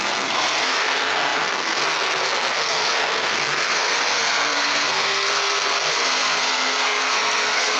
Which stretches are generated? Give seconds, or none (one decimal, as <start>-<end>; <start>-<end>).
0.0-7.8